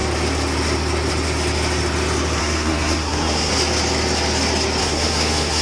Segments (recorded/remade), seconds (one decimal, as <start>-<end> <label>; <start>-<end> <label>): 0.0-2.4 recorded; 2.4-3.5 remade; 3.5-4.8 recorded; 4.8-5.6 remade